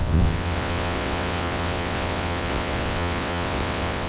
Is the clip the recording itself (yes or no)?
no